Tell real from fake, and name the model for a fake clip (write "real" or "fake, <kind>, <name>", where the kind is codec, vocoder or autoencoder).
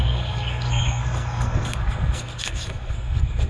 fake, codec, SNAC